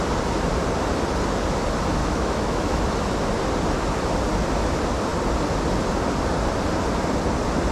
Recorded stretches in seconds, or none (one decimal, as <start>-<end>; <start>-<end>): 0.0-2.0; 2.8-7.7